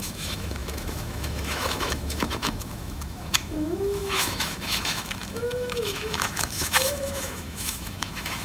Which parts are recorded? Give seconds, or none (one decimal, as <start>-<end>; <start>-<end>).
none